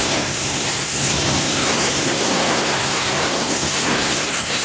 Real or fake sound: fake